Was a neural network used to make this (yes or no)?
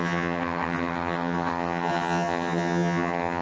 yes